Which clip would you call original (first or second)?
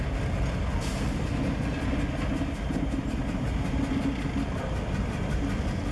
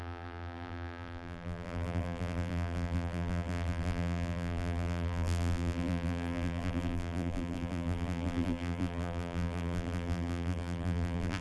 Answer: first